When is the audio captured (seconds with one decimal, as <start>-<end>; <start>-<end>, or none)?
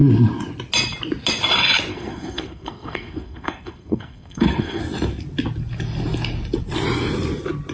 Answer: 0.0-1.9; 4.8-7.7